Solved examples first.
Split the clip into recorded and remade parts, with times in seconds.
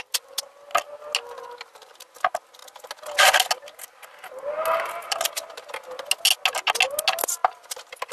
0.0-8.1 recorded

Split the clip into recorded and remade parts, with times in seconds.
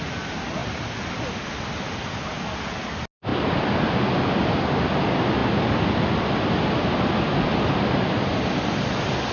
0.0-9.3 recorded